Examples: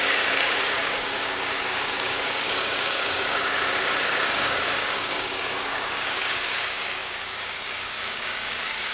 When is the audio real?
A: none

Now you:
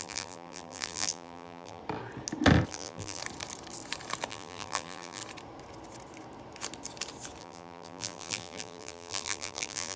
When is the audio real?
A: 1.8-2.7; 3.2-4.3; 5.2-7.4

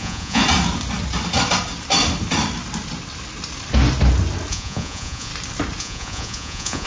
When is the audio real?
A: 0.4-4.5; 5.3-5.8

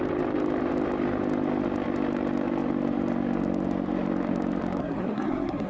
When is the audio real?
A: 0.0-4.8

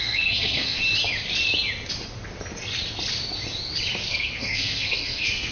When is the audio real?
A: 0.8-4.1

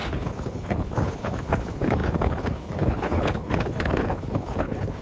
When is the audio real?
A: none

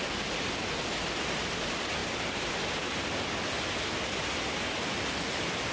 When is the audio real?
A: 0.0-5.7

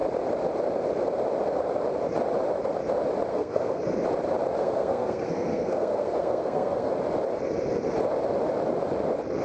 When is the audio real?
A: 0.0-3.3; 3.8-4.6; 6.9-9.4